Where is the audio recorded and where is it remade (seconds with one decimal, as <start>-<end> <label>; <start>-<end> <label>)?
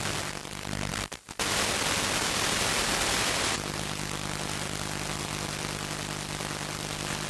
0.0-7.3 recorded